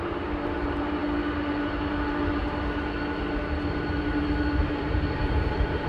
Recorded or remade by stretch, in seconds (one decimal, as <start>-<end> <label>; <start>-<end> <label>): 0.0-1.0 remade; 1.0-4.5 recorded; 4.5-5.9 remade